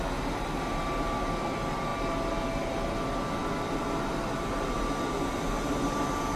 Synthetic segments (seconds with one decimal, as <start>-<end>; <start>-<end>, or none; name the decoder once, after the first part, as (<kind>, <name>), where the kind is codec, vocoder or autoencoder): none